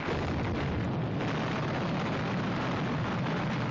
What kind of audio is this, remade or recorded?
recorded